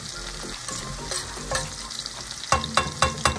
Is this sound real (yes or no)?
yes